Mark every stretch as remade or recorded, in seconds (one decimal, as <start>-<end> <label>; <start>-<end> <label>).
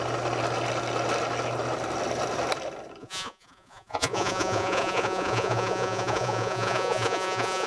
0.0-3.0 recorded; 3.0-7.7 remade